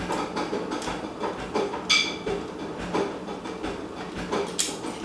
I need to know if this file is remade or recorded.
recorded